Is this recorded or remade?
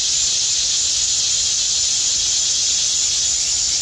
recorded